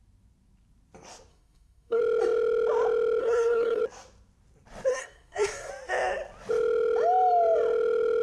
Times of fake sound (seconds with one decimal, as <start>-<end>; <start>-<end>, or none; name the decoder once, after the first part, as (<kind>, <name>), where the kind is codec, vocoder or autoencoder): 1.3-2.0 (codec, SNAC); 3.2-3.8; 4.9-5.7